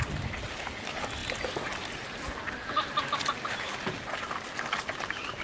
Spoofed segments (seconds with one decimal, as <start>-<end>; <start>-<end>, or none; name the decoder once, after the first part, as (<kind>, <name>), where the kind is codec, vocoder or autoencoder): 0.0-1.2 (vocoder, BigVGAN v2); 4.4-5.4